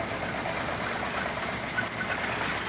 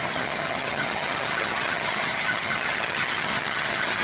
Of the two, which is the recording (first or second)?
first